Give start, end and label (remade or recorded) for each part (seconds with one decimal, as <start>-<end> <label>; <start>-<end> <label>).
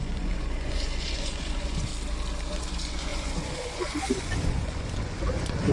0.0-1.9 remade; 1.9-2.5 recorded; 2.5-5.7 remade